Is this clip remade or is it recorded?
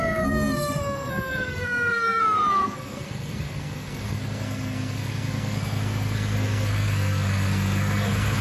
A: remade